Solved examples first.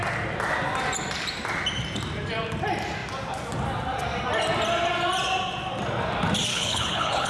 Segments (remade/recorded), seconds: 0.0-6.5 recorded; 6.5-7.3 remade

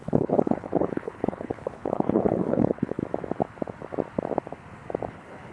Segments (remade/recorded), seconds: 0.0-3.0 remade; 3.0-5.1 recorded; 5.1-5.5 remade

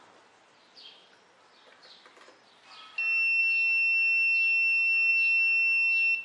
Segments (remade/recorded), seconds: 0.0-6.2 recorded

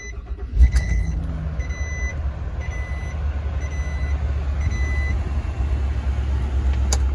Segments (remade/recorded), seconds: 0.0-0.5 recorded; 0.5-1.2 remade; 1.2-7.1 recorded

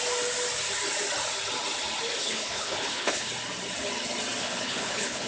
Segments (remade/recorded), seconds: 0.0-2.2 recorded; 2.2-3.3 remade; 3.3-4.4 recorded; 4.4-5.3 remade

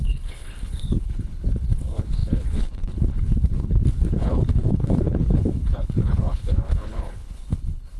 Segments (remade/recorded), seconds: 0.0-8.0 remade

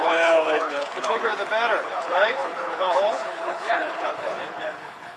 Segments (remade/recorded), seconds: 0.0-1.3 remade; 1.3-1.8 recorded; 1.8-5.2 remade

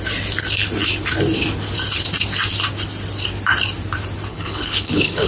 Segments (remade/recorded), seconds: 0.0-4.3 recorded; 4.3-5.3 remade